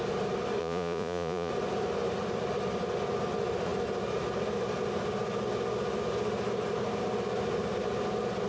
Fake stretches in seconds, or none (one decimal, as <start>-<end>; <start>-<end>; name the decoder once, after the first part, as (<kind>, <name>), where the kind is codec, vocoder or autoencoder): 0.6-1.5 (vocoder, Vocos)